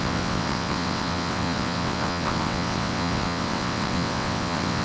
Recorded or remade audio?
remade